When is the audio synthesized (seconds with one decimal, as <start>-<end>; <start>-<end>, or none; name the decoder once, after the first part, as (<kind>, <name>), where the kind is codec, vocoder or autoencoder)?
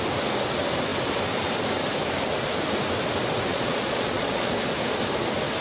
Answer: 3.5-4.5 (vocoder, Vocos)